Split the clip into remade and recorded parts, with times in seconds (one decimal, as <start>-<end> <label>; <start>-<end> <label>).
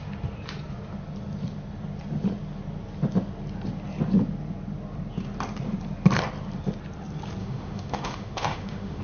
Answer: 0.0-7.4 recorded; 7.4-9.0 remade